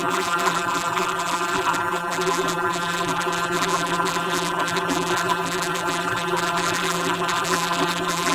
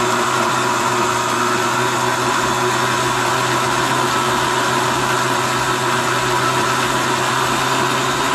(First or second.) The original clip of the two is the second